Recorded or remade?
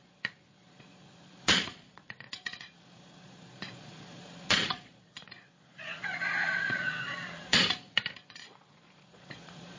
remade